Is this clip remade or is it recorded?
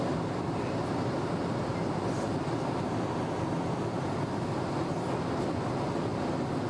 recorded